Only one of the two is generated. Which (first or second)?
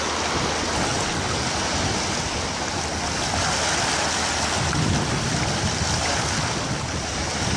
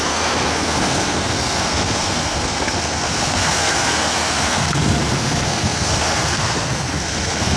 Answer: second